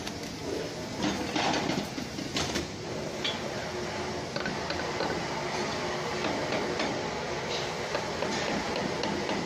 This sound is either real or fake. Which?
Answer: real